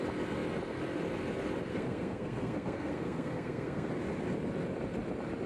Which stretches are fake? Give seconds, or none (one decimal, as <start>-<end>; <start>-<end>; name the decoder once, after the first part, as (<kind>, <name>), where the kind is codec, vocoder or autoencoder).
1.7-3.9 (codec, SNAC)